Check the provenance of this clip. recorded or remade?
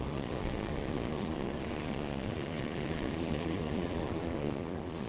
remade